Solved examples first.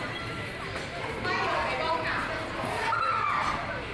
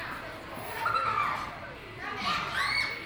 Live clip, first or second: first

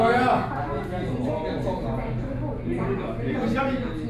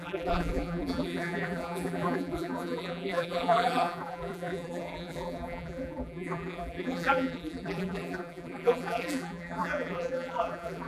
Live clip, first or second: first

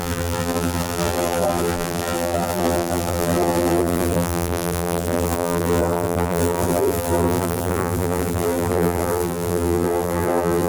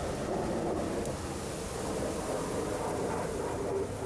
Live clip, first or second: second